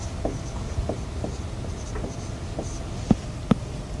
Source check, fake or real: real